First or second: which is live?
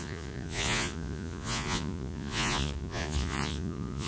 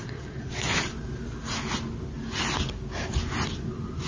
second